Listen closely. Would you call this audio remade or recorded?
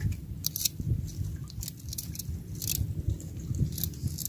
recorded